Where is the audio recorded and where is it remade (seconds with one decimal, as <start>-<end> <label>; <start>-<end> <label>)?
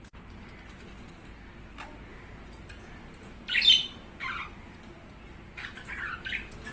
0.0-6.7 recorded